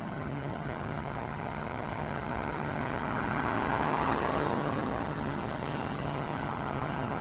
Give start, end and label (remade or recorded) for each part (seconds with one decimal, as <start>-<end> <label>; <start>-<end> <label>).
0.0-7.2 remade